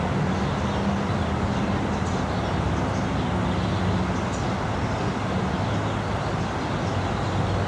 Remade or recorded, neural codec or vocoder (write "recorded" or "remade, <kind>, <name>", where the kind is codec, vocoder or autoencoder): recorded